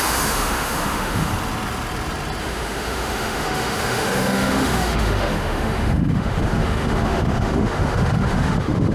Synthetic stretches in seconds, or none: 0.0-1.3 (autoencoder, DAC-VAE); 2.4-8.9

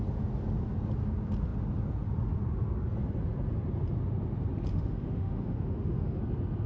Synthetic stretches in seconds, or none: 4.7-6.2 (autoencoder, DAC-VAE)